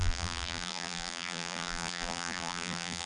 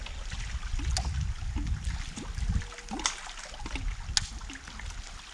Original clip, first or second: second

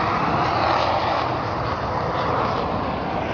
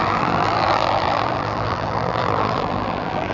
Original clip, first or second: first